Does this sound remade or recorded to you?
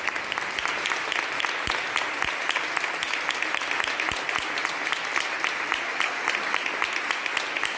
recorded